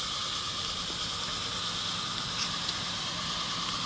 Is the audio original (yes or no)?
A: yes